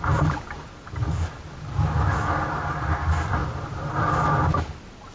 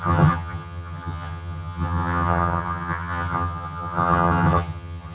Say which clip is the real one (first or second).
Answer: first